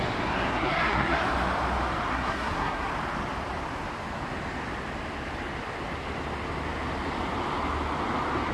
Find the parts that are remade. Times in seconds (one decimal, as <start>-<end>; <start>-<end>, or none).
0.5-1.2; 2.1-2.9